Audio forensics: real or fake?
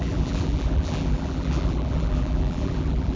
fake